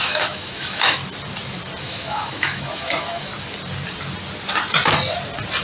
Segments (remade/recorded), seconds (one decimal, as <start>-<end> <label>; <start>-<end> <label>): 0.0-1.0 remade; 1.0-1.8 recorded; 1.8-3.3 remade; 3.3-5.6 recorded